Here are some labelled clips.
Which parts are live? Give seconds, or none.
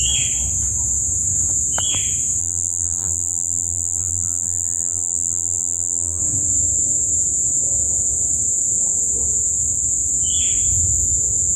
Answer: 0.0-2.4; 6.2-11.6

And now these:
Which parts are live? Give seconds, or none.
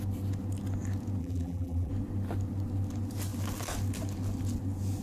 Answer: 0.0-1.2; 1.9-5.0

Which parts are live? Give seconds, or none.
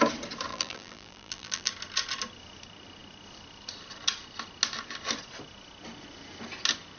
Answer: 0.0-0.5; 1.7-7.0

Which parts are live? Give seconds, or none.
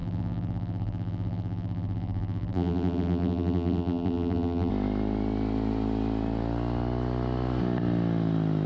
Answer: 4.7-8.7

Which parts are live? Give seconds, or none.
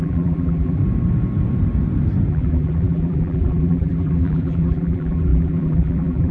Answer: 0.8-2.3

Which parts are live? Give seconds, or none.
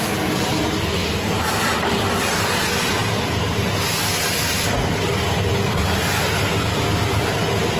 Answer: 0.0-1.0; 2.2-7.8